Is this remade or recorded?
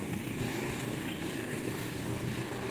remade